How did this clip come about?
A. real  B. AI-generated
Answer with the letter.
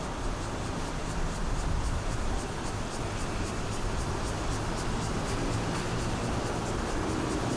A